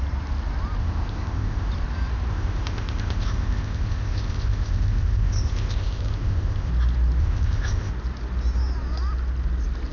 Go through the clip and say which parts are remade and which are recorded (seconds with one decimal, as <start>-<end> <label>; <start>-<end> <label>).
0.0-0.8 recorded; 0.8-1.7 remade; 1.7-2.3 recorded; 2.3-6.7 remade; 6.7-7.2 recorded; 7.2-7.9 remade; 7.9-9.9 recorded